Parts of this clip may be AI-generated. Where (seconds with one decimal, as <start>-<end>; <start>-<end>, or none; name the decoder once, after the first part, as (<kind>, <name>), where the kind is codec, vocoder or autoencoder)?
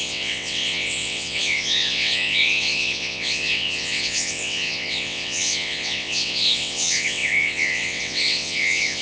0.0-9.0 (vocoder, WaveNeXt)